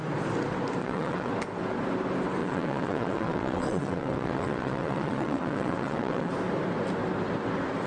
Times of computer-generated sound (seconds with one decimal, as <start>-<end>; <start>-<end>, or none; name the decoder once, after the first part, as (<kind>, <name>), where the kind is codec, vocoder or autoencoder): 0.8-1.3 (vocoder, WaveNeXt); 2.4-6.3